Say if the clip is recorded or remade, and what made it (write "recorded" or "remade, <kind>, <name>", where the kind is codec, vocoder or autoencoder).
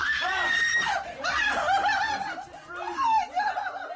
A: remade, vocoder, BigVGAN v2